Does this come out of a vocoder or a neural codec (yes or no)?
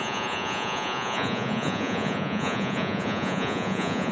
yes